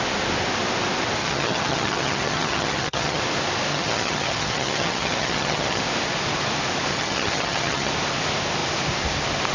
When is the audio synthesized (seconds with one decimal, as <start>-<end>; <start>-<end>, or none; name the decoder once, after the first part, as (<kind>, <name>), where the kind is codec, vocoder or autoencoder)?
1.2-3.2 (vocoder, HiFi-GAN); 3.7-5.8; 6.9-7.9